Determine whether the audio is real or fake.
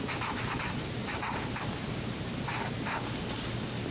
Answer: real